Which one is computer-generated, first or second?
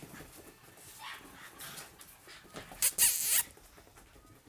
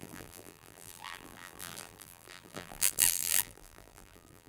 second